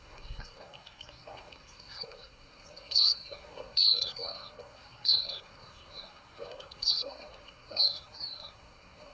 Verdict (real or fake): fake